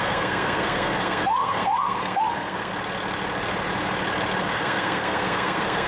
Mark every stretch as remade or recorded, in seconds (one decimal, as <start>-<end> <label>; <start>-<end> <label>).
0.0-2.7 remade; 2.7-4.4 recorded; 4.4-5.9 remade